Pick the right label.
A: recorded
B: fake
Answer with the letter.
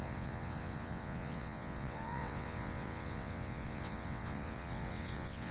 B